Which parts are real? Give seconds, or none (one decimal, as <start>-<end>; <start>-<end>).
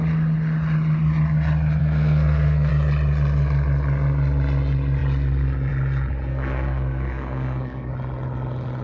0.0-1.8; 2.7-6.3; 7.9-8.8